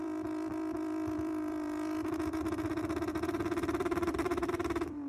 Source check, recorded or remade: remade